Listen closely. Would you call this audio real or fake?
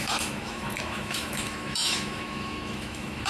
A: fake